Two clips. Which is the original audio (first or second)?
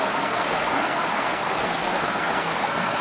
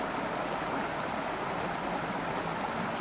second